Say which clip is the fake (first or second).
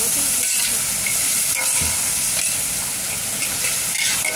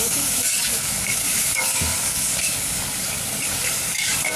second